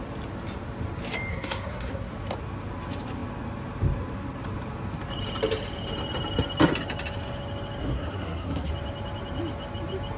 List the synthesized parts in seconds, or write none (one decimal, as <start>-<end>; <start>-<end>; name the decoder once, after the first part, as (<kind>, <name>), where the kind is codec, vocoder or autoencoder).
1.3-2.1 (codec, SNAC); 7.8-8.7